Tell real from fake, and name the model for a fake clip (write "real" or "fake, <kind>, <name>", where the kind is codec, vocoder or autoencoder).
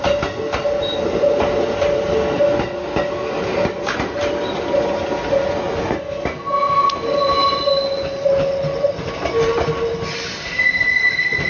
real